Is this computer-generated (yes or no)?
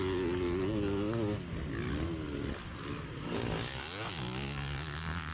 no